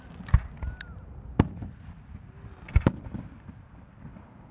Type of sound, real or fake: real